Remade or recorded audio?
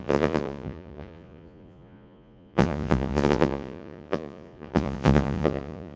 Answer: remade